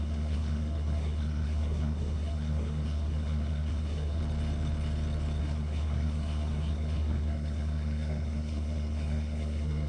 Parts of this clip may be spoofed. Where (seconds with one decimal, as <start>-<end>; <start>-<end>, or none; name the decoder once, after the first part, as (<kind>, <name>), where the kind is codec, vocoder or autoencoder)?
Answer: 0.0-4.2 (codec, SNAC); 5.4-9.9